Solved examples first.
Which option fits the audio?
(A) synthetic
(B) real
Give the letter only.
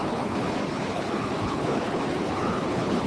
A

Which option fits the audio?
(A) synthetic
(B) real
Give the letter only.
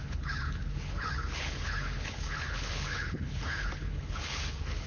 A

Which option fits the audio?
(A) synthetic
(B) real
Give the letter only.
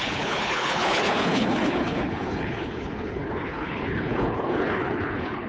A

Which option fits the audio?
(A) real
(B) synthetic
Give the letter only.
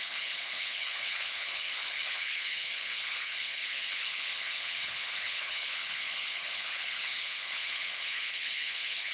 B